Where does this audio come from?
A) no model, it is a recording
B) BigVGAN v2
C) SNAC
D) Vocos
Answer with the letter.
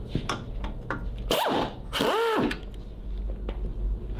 A